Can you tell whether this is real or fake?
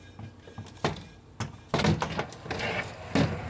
real